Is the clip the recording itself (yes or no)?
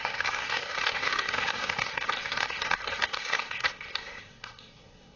no